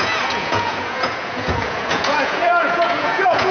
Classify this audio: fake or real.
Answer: fake